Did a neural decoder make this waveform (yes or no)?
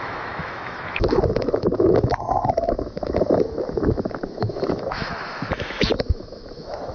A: yes